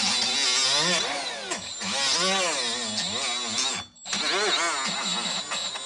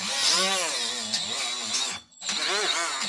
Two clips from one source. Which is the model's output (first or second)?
second